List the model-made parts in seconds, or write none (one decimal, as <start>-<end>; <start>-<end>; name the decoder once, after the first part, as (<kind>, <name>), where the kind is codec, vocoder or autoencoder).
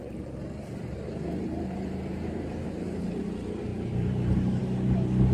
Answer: 0.0-3.2 (vocoder, BigVGAN v2); 3.7-4.6